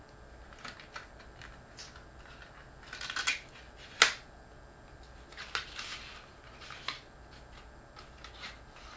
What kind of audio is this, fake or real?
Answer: real